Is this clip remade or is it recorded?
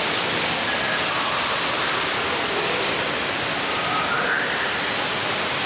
recorded